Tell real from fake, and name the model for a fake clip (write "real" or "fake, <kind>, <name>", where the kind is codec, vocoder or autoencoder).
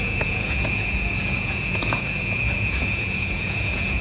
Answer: fake, vocoder, Vocos